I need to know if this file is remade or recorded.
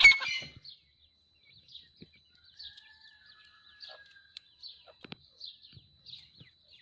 recorded